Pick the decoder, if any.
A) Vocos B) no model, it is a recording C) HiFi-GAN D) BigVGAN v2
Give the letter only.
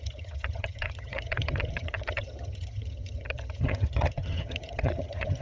C